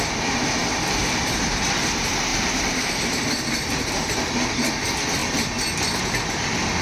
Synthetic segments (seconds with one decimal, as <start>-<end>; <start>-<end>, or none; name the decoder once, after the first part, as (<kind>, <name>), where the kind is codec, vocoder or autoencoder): 0.6-1.6 (vocoder, BigVGAN v2); 2.3-3.3